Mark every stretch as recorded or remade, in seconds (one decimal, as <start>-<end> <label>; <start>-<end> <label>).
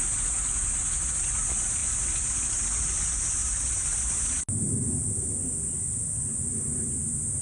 0.0-7.4 recorded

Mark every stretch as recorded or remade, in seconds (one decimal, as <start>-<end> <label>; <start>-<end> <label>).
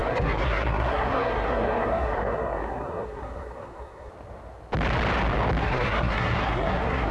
0.0-4.1 remade; 4.1-5.6 recorded; 5.6-7.1 remade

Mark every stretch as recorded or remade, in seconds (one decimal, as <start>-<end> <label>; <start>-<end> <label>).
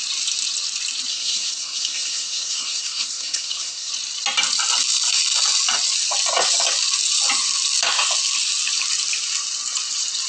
0.0-1.1 recorded; 1.1-3.9 remade; 3.9-10.3 recorded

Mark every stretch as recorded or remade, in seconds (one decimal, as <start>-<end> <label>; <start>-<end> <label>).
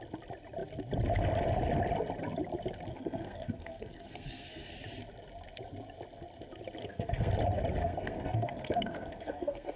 0.0-2.9 recorded; 2.9-4.7 remade; 4.7-6.8 recorded; 6.8-7.3 remade; 7.3-7.8 recorded; 7.8-9.8 remade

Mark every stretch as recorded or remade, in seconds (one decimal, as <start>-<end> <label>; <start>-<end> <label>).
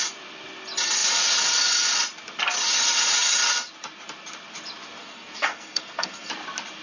0.0-5.0 recorded; 5.0-6.3 remade; 6.3-6.8 recorded